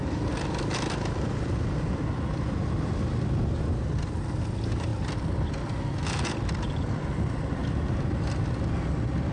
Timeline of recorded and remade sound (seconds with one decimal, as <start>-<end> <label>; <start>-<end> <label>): 0.0-7.6 recorded; 7.6-8.2 remade; 8.2-9.3 recorded